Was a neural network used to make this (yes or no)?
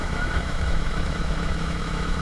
yes